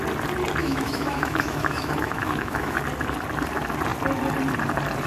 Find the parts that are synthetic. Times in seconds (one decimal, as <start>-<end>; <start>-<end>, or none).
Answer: 0.6-2.8